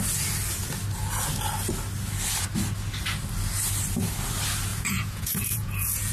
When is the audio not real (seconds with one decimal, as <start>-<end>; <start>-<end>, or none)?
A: 4.7-6.1